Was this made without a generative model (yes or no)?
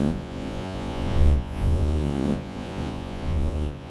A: no